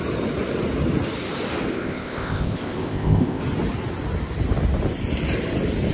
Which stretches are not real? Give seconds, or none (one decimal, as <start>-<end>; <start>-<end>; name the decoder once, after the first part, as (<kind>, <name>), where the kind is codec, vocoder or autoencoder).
1.7-3.4 (codec, ZipCodec)